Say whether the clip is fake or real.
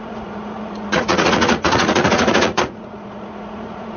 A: fake